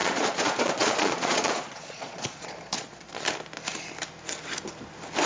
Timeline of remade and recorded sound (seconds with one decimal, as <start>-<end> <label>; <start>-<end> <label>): 0.0-3.1 remade; 3.1-5.2 recorded